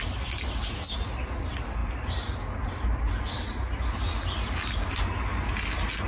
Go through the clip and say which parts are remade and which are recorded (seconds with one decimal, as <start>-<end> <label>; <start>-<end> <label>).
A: 0.0-6.1 recorded